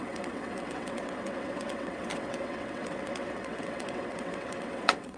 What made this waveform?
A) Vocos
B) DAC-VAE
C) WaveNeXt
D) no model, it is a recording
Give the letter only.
C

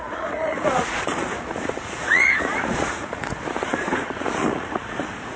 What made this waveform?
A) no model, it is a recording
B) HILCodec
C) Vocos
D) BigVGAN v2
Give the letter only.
C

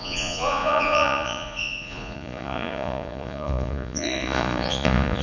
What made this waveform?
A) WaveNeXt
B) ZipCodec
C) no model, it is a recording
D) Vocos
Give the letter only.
D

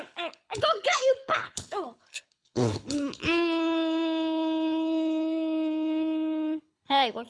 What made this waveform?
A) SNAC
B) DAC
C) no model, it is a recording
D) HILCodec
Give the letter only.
D